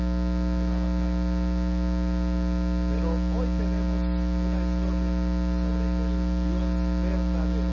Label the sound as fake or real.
real